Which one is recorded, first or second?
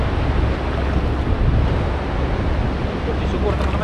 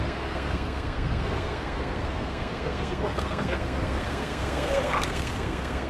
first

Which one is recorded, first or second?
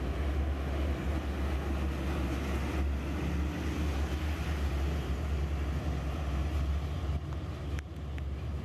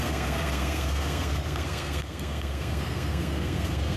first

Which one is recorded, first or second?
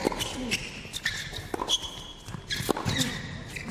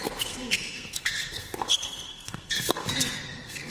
first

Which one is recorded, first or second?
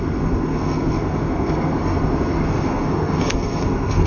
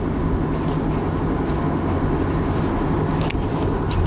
second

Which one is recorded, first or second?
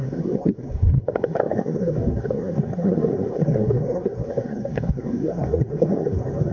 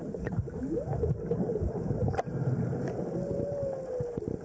second